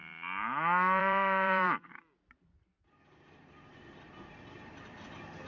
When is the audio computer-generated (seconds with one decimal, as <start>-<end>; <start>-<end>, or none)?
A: 1.0-4.3